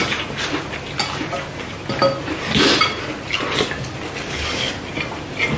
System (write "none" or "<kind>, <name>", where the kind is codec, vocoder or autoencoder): none